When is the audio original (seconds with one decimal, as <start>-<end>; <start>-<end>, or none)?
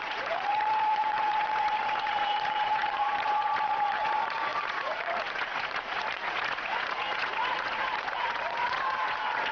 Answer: none